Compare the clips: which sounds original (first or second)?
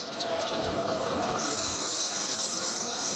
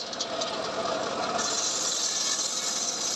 second